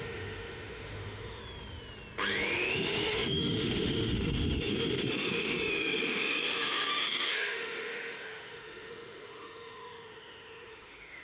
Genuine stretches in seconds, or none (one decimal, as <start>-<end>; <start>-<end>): 1.4-2.7